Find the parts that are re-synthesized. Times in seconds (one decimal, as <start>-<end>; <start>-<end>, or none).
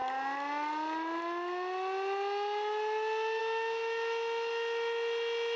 none